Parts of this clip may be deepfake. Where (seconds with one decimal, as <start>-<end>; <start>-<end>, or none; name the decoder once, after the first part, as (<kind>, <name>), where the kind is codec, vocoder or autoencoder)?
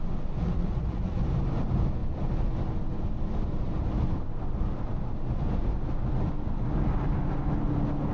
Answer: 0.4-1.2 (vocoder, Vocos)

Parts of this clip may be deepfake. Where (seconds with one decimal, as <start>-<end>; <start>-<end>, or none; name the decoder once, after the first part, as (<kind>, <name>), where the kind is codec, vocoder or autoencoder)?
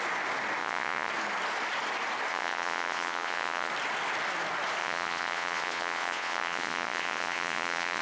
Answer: 0.6-1.1 (vocoder, Vocos); 2.3-3.7; 4.8-8.0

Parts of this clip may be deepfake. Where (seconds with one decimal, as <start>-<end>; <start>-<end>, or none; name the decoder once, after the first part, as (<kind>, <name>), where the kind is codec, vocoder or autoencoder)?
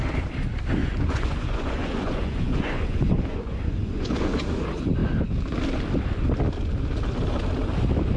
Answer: 0.8-4.6 (vocoder, Vocos)